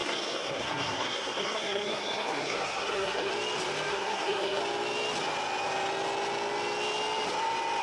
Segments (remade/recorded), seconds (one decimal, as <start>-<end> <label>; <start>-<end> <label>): 0.0-3.3 remade; 3.3-3.9 recorded; 3.9-4.6 remade; 4.6-7.8 recorded